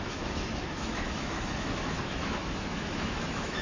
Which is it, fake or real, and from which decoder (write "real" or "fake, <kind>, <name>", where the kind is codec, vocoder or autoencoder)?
fake, autoencoder, DAC-VAE